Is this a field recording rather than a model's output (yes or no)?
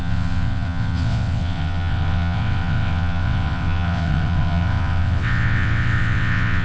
no